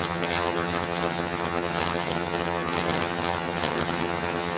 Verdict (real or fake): fake